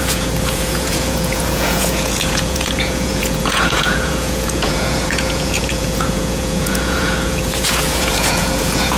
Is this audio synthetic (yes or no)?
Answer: yes